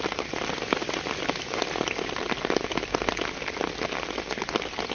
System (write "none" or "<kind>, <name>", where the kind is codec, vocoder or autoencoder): none